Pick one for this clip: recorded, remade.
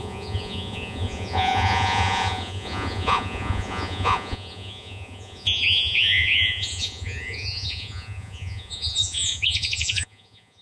remade